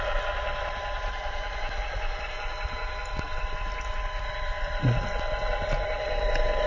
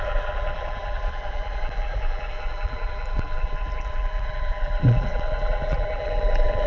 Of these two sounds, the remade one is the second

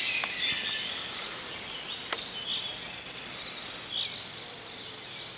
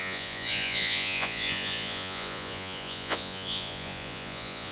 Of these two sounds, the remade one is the second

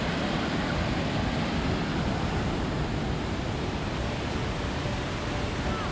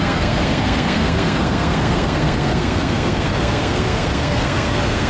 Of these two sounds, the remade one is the second